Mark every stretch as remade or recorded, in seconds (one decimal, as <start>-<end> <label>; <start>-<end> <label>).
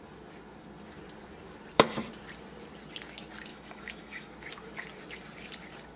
0.0-3.5 recorded; 3.5-4.3 remade; 4.3-6.0 recorded